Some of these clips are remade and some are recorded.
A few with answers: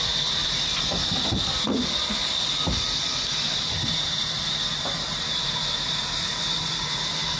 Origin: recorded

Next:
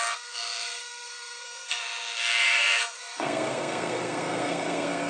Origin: remade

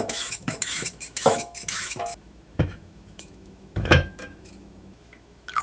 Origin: remade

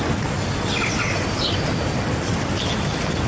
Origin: recorded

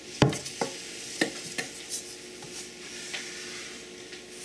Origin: recorded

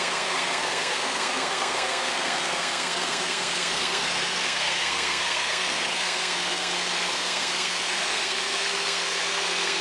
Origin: remade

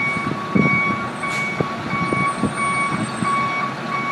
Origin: recorded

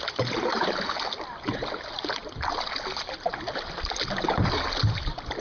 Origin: recorded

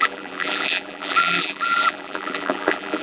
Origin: remade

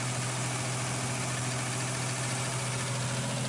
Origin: recorded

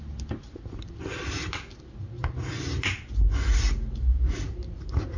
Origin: recorded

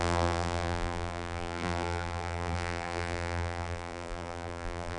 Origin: remade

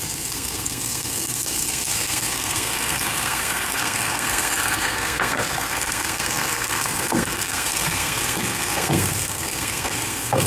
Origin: remade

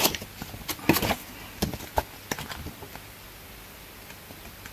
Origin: recorded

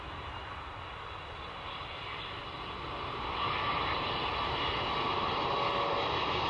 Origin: recorded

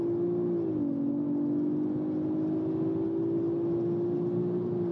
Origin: recorded